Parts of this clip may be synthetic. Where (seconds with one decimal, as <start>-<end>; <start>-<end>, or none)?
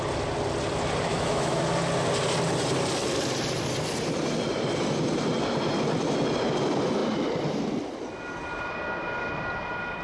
1.1-1.6